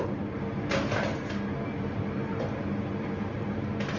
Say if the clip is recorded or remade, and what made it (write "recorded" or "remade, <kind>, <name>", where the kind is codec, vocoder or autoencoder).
recorded